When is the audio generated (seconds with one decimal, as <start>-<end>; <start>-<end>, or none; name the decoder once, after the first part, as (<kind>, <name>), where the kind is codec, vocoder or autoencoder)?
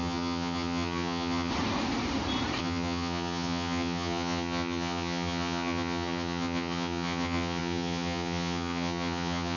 0.0-1.5 (vocoder, HiFi-GAN); 2.6-9.6